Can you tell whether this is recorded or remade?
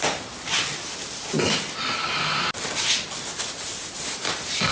recorded